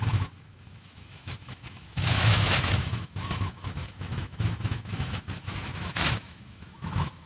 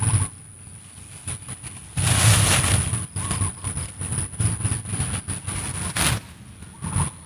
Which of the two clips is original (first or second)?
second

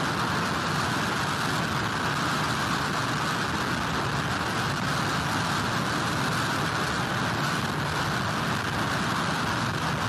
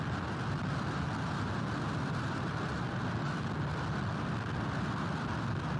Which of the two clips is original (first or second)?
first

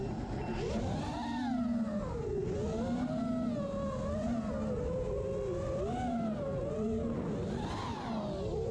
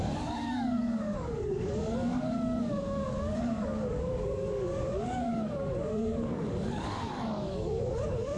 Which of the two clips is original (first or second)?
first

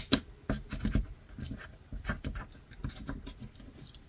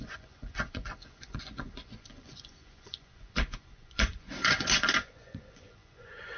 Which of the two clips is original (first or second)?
first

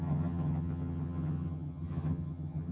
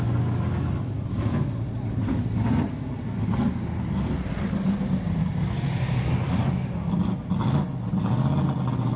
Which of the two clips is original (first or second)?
second